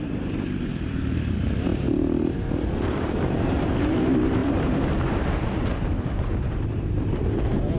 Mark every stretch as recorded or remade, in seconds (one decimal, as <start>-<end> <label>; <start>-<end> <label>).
0.0-7.8 remade